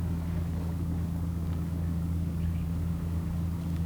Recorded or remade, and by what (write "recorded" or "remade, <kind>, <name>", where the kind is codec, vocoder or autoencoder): remade, codec, DAC